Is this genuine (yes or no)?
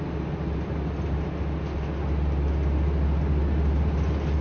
yes